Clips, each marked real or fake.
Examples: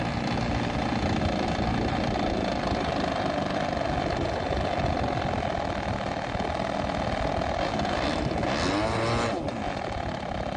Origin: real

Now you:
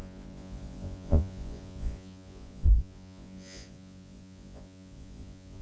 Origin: fake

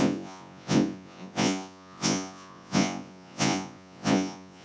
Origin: fake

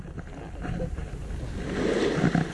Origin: real